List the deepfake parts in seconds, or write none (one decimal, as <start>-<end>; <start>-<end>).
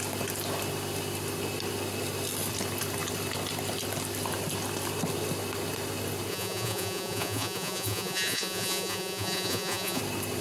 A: 6.3-10.0